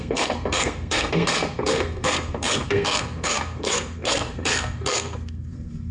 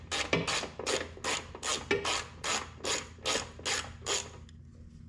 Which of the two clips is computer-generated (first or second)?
first